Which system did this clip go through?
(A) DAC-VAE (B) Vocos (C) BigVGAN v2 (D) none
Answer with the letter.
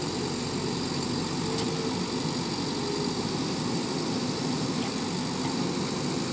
D